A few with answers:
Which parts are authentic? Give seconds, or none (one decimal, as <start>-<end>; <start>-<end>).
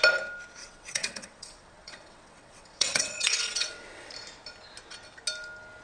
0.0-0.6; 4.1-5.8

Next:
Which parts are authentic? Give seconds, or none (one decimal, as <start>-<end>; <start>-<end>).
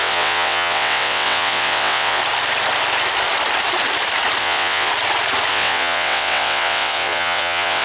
2.2-4.4; 4.9-5.5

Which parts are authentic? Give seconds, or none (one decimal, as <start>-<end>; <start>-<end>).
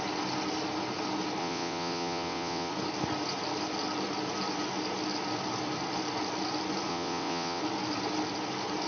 0.0-1.4; 2.7-6.9; 7.6-8.9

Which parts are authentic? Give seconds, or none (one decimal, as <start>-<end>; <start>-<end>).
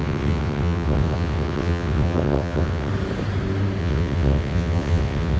2.9-3.8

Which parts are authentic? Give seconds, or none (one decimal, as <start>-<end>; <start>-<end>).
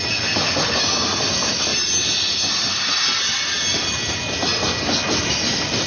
0.0-5.9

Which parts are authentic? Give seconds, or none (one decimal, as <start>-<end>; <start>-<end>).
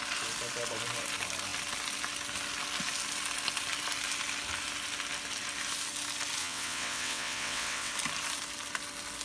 0.0-6.4; 7.9-9.2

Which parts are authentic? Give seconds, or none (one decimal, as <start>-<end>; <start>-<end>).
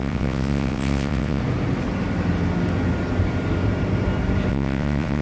1.4-4.5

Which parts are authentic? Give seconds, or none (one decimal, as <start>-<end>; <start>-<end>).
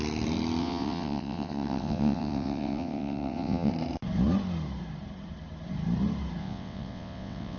0.0-0.6; 3.7-6.4